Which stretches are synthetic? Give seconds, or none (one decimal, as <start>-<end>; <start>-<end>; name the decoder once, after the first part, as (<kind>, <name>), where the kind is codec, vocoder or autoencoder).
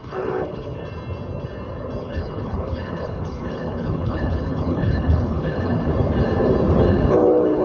0.0-0.8 (codec, HILCodec); 2.0-5.9; 6.9-7.6